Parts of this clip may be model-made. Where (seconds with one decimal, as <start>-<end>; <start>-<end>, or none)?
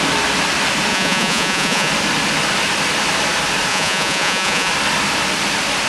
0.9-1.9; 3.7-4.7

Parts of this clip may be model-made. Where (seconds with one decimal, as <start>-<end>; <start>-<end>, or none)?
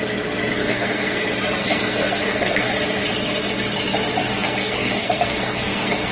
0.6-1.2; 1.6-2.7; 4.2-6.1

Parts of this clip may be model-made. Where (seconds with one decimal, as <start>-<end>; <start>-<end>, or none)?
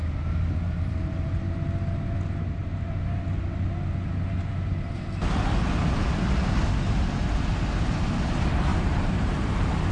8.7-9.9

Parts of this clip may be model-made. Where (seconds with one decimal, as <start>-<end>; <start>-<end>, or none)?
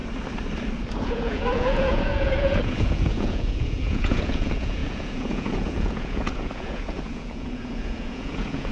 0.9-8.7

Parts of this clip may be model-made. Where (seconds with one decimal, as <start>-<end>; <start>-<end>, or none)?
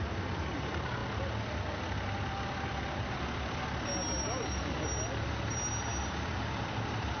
none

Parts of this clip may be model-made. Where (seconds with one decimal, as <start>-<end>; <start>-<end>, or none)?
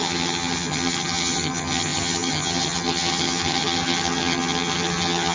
0.0-5.3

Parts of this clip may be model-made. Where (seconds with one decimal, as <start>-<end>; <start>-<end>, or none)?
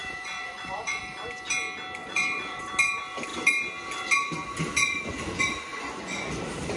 0.0-1.0; 2.0-2.6; 5.7-6.3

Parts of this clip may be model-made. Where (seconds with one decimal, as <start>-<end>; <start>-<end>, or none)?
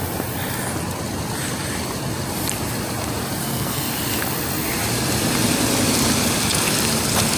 3.4-3.9